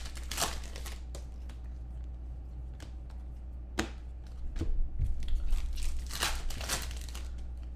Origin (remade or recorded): recorded